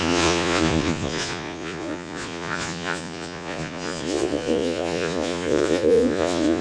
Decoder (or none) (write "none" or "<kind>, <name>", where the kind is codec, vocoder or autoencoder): vocoder, Vocos